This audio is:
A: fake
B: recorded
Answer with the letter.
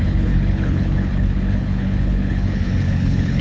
A